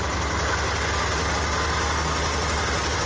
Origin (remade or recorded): recorded